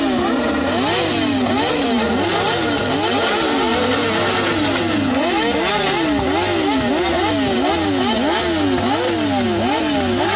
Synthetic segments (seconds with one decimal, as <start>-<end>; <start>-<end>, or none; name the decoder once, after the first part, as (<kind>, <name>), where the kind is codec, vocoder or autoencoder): none